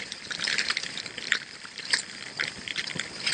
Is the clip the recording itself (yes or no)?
no